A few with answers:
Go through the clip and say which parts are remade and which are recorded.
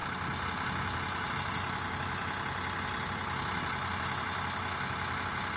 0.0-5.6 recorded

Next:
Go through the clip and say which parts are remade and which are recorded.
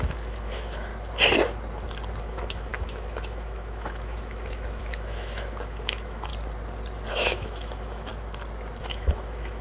0.0-0.9 remade; 0.9-2.2 recorded; 2.2-6.3 remade; 6.3-7.1 recorded; 7.1-8.1 remade; 8.1-8.8 recorded; 8.8-9.6 remade